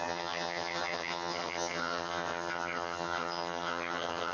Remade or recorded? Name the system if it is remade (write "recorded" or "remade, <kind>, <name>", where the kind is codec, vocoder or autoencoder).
remade, vocoder, HiFi-GAN